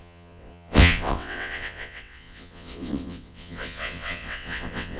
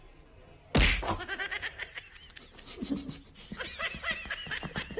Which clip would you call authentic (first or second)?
second